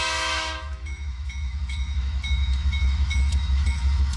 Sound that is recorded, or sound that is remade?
remade